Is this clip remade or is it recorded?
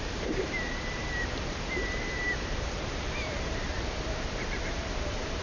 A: remade